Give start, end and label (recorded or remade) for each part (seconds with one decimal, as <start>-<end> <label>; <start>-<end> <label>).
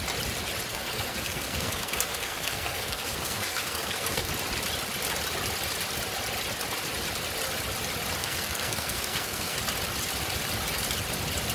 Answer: 0.0-0.7 recorded; 0.7-4.3 remade; 4.3-8.2 recorded; 8.2-9.6 remade; 9.6-11.5 recorded